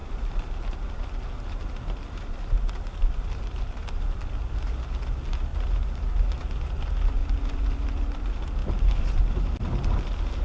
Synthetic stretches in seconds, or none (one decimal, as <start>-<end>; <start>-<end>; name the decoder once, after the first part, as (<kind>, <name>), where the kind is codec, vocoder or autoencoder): none